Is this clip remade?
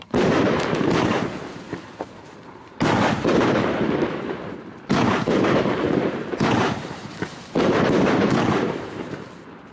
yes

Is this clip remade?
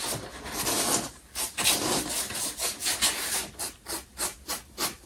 no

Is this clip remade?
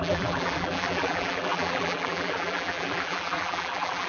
yes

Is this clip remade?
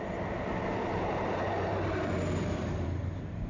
yes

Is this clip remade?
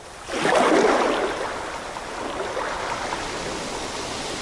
yes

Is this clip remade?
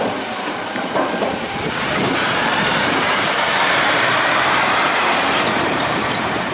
yes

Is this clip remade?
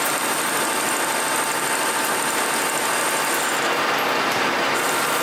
no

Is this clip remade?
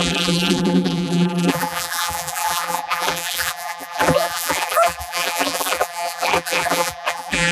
yes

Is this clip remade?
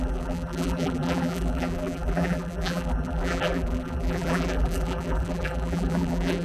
yes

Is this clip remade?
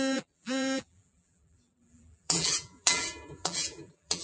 yes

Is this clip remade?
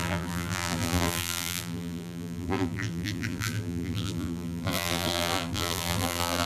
yes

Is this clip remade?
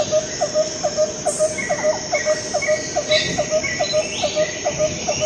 no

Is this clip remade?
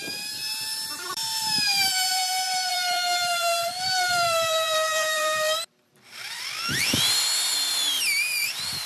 yes